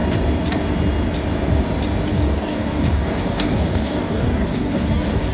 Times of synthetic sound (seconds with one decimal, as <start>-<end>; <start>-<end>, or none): 2.1-5.3

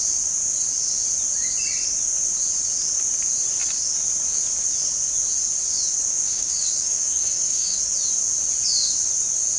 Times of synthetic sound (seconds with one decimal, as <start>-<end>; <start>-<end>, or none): 6.1-7.8

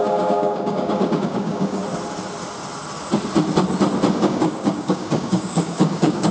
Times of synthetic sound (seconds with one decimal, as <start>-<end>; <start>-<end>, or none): 0.0-1.8; 4.1-6.3

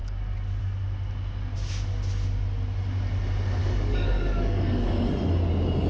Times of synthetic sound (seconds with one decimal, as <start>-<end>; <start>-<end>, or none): 3.6-5.1